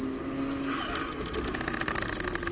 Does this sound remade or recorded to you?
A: recorded